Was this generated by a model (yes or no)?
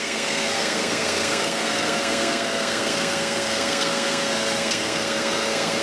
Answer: yes